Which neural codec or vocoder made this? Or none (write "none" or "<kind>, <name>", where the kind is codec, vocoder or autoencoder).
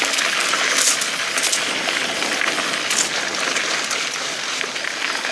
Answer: none